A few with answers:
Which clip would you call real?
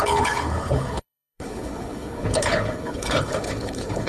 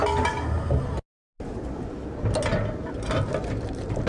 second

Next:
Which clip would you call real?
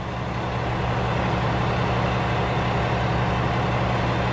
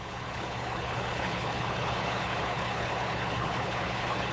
first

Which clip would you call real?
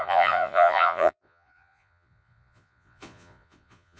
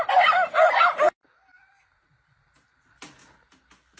second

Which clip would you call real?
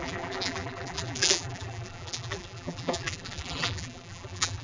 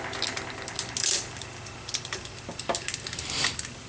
second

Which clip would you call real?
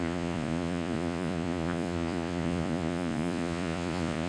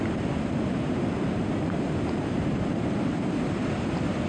second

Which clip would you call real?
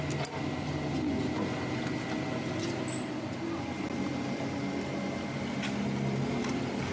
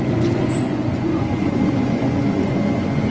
first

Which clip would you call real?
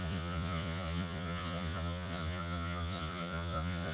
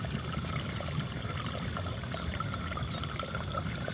second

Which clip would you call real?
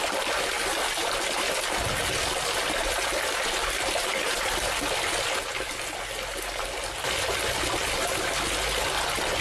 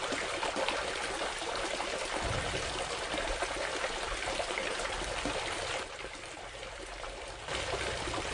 first